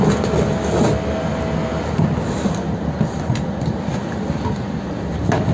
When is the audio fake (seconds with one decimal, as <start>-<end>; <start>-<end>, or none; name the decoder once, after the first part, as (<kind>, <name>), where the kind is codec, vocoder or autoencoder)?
none